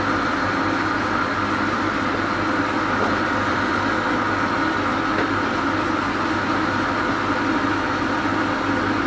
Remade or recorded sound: recorded